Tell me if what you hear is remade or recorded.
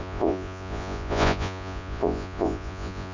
remade